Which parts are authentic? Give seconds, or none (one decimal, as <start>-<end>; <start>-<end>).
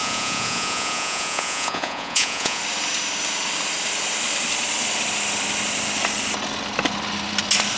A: 2.6-7.8